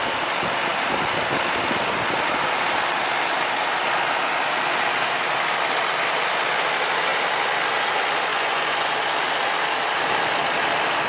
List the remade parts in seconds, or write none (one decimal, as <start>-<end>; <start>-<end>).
8.3-8.9